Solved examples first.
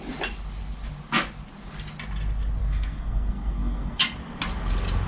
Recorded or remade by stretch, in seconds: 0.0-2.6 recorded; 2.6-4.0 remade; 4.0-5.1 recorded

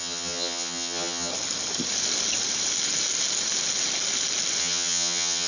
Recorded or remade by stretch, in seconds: 0.0-1.3 remade; 1.3-4.6 recorded; 4.6-5.5 remade

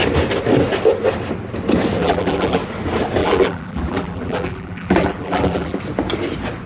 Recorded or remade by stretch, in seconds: 0.0-2.0 recorded; 2.0-2.6 remade; 2.6-3.2 recorded; 3.2-5.8 remade; 5.8-6.7 recorded

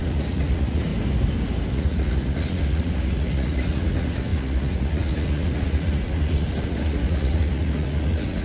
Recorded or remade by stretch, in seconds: 0.0-0.9 remade; 0.9-1.7 recorded; 1.7-8.4 remade

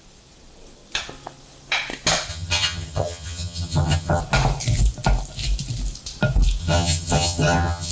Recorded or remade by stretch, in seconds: 0.0-2.3 recorded; 2.3-4.2 remade; 4.2-6.6 recorded; 6.6-7.9 remade

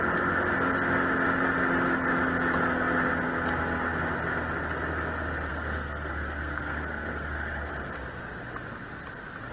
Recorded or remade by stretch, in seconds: 0.0-5.5 recorded; 5.5-7.7 remade; 7.7-9.5 recorded